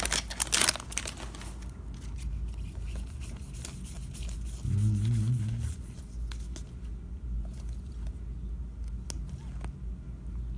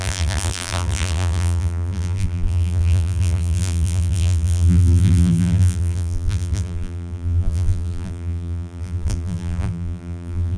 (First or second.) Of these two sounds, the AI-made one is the second